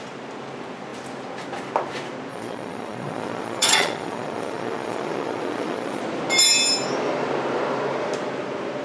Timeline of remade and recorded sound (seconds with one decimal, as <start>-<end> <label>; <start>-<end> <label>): 0.0-2.3 recorded; 2.3-6.0 remade; 6.0-8.8 recorded